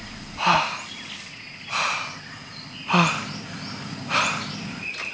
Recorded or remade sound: recorded